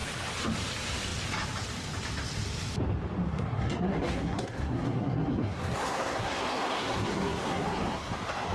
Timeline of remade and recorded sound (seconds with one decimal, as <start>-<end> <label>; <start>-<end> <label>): 0.0-3.3 recorded; 3.3-8.1 remade; 8.1-8.5 recorded